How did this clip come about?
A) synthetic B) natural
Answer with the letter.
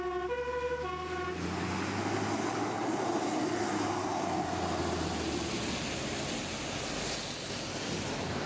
B